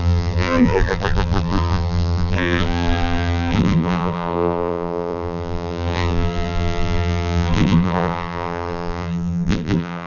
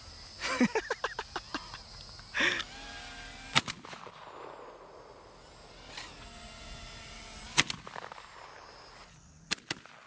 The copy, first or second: first